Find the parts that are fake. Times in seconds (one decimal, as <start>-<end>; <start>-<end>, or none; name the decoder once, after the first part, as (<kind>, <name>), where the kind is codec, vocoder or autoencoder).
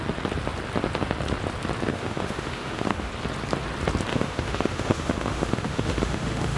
1.9-3.1 (autoencoder, DAC-VAE); 4.1-6.6